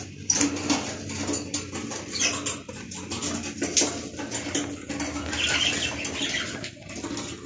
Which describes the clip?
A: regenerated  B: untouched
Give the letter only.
B